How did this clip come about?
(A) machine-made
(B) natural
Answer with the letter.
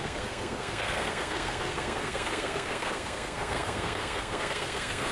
A